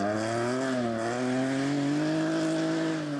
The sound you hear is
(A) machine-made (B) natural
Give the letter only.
B